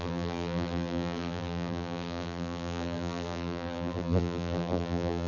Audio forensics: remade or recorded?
remade